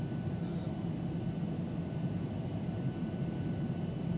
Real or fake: real